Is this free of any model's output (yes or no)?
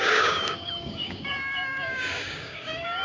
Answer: no